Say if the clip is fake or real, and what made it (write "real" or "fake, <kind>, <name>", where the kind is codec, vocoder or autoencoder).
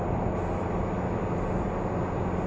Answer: real